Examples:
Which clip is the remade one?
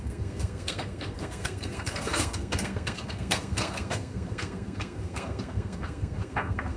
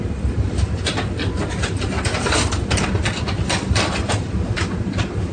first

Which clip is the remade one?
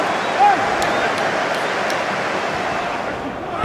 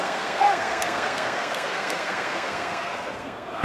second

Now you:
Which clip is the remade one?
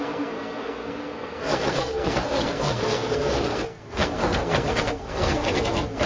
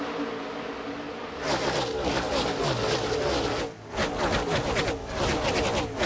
first